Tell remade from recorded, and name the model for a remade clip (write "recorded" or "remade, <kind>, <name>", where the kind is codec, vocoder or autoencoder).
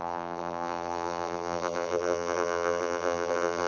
remade, vocoder, BigVGAN v2